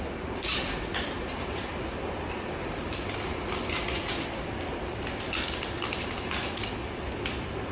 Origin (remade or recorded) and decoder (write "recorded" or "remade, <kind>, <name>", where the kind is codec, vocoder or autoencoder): recorded